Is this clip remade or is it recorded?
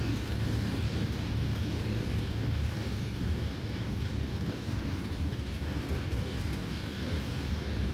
remade